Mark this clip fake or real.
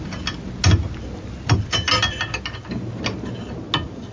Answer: real